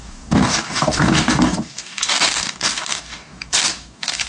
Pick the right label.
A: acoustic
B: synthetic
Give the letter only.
B